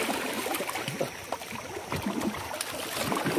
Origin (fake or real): real